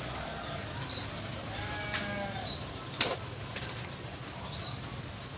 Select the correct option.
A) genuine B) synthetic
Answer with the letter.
A